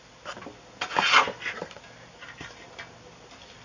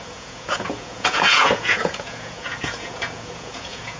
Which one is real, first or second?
first